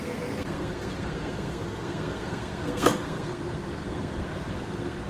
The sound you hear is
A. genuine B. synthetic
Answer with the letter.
B